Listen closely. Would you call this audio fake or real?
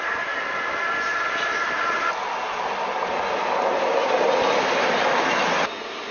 real